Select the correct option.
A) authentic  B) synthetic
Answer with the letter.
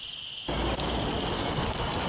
A